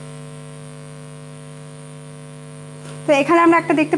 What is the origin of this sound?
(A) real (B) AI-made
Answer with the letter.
B